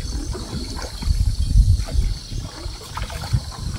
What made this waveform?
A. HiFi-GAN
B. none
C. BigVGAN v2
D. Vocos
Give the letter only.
C